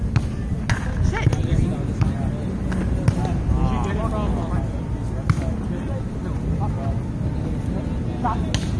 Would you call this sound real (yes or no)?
yes